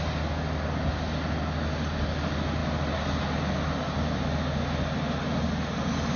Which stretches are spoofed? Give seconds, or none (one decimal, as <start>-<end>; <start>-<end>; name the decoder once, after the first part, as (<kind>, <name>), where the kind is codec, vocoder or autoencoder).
none